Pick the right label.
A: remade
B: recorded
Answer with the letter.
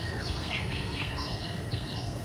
A